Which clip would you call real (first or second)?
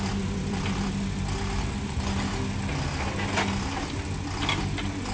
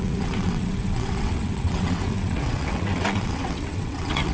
first